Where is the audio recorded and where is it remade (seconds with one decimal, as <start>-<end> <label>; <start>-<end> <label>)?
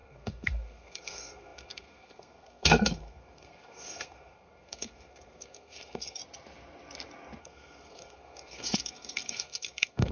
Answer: 0.0-6.2 remade; 6.2-7.4 recorded; 7.4-10.1 remade